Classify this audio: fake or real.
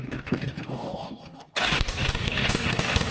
fake